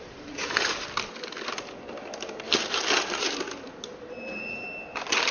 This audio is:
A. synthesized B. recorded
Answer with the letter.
B